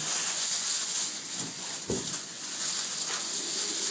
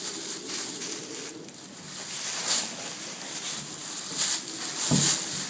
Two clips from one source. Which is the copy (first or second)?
first